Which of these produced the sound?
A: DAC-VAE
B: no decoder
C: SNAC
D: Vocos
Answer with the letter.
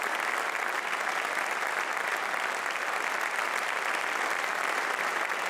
B